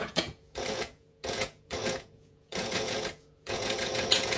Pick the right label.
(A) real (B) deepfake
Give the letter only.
B